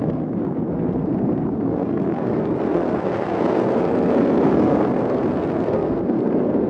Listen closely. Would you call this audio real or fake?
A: fake